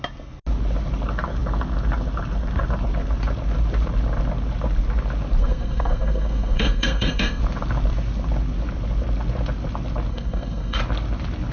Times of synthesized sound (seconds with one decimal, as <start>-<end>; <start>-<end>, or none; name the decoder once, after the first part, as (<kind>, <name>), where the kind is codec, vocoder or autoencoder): 5.4-7.4 (codec, SNAC); 10.1-10.8